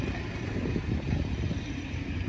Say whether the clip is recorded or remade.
remade